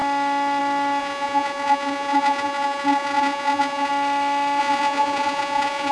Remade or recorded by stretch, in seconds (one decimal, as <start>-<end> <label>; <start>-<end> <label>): 0.0-1.0 recorded; 1.0-3.9 remade; 3.9-4.6 recorded; 4.6-5.9 remade